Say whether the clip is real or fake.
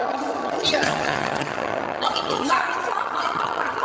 fake